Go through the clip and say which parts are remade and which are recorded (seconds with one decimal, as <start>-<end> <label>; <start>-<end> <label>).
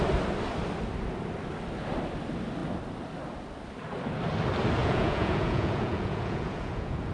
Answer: 0.0-4.8 recorded; 4.8-7.1 remade